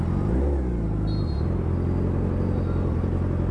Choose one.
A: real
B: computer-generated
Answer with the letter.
A